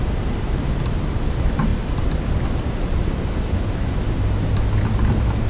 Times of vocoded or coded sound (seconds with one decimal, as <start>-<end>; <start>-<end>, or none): none